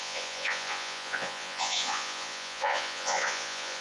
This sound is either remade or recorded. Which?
remade